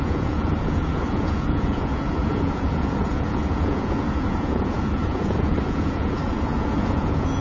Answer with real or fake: fake